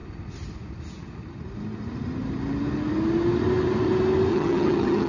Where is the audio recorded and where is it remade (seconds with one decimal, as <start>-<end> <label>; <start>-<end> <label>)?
0.0-4.3 recorded; 4.3-5.1 remade